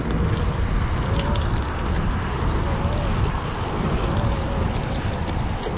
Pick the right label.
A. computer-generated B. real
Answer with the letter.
B